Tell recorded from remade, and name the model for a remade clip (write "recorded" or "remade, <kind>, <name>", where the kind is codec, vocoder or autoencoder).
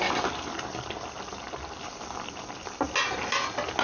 recorded